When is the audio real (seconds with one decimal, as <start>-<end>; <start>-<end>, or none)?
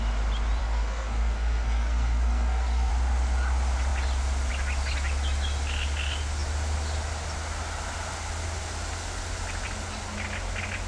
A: 0.0-0.6; 2.9-10.9